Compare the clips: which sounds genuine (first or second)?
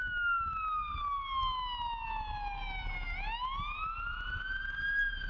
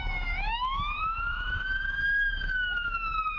first